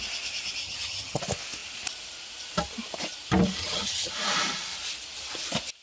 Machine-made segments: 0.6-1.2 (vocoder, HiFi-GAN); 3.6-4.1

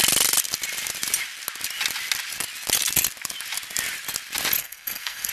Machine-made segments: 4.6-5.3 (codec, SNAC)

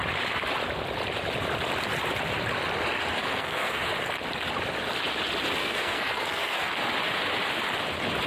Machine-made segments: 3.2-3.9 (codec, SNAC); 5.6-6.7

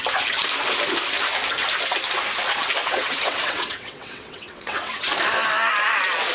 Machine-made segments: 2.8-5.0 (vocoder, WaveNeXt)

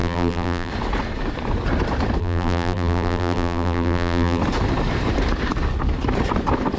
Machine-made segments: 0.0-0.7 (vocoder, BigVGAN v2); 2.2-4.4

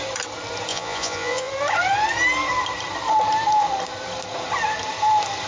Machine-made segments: 0.7-1.5 (vocoder, Vocos)